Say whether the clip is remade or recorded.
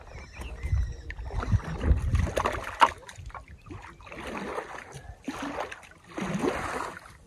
recorded